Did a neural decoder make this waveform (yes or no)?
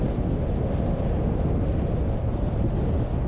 no